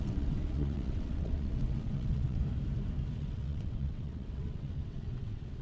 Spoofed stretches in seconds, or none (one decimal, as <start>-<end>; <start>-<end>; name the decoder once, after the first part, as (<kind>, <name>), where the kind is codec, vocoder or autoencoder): 0.0-2.4 (vocoder, WaveNeXt); 3.2-5.6

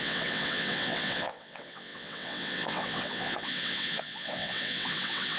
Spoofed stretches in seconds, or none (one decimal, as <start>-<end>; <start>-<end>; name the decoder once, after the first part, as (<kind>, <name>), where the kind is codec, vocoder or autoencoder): 0.0-5.4 (vocoder, WaveNeXt)

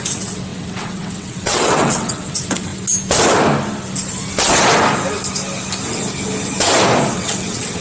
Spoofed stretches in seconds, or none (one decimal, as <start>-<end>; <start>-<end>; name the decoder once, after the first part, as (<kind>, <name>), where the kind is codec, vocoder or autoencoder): 0.0-2.7 (vocoder, WaveNeXt); 7.1-7.8

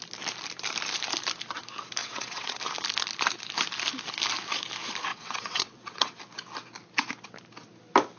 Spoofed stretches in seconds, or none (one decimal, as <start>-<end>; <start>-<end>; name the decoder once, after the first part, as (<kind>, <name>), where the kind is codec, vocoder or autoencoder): 2.0-2.6 (vocoder, WaveNeXt); 5.1-6.2

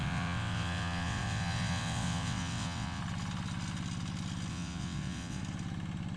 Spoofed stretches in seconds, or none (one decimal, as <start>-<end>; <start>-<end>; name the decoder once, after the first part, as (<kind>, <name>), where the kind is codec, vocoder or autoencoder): 0.0-3.0 (vocoder, WaveNeXt); 4.5-5.4

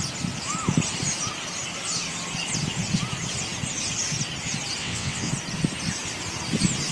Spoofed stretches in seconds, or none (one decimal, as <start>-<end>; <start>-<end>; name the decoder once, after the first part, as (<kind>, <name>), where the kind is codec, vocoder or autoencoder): 4.8-5.3 (vocoder, WaveNeXt)

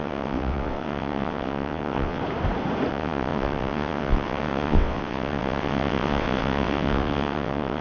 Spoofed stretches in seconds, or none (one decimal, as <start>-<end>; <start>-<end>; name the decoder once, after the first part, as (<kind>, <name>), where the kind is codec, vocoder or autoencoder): 0.0-2.2 (vocoder, WaveNeXt); 2.9-7.8